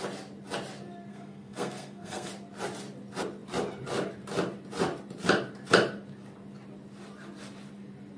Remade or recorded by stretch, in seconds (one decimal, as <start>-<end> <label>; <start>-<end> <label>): 0.0-1.1 recorded; 1.1-2.3 remade; 2.3-8.2 recorded